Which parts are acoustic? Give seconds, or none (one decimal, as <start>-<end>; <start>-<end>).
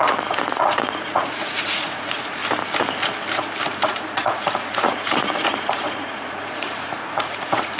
2.4-3.9